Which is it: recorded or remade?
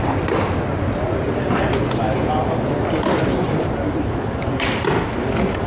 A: recorded